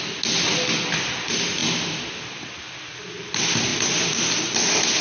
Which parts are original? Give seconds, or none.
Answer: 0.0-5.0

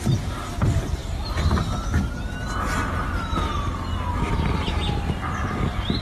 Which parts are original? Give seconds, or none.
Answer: 1.0-4.3

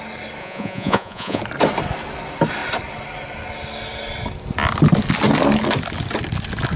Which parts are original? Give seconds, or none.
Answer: 0.0-0.4; 1.4-6.8

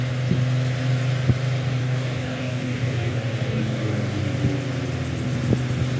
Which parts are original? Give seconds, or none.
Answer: 0.0-1.8; 4.2-6.0

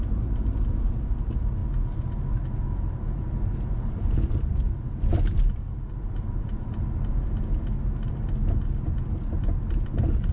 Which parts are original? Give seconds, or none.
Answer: 0.0-10.3